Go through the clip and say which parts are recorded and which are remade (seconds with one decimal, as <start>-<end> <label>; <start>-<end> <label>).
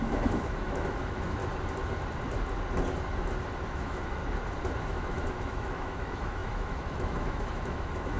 0.0-1.4 remade; 1.4-3.7 recorded; 3.7-4.2 remade; 4.2-4.8 recorded; 4.8-8.2 remade